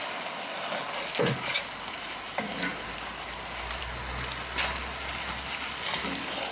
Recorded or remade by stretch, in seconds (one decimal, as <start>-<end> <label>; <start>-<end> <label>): 0.0-6.5 recorded